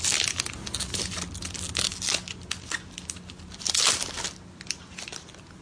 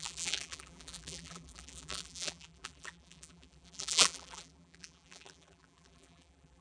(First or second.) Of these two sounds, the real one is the first